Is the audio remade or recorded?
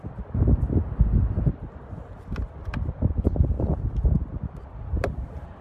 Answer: recorded